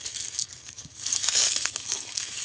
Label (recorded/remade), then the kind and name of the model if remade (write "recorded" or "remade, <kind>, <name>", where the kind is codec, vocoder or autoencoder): remade, codec, SNAC